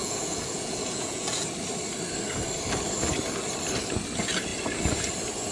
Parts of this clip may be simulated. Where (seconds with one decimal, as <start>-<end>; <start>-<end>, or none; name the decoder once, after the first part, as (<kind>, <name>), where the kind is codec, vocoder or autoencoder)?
0.0-1.5 (vocoder, Vocos)